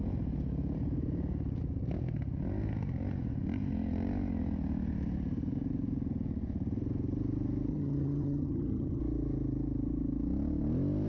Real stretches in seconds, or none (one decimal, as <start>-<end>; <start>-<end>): 0.0-7.7; 9.0-11.1